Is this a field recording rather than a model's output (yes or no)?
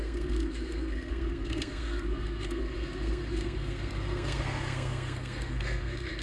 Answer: no